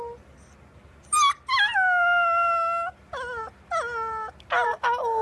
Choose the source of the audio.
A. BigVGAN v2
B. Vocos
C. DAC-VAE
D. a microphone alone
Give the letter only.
D